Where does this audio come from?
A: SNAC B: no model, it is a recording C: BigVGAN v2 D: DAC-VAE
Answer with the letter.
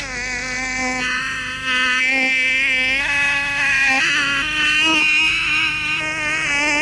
D